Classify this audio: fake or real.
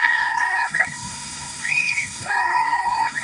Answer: fake